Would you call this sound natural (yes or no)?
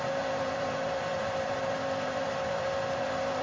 no